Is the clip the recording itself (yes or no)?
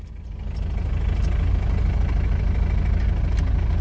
yes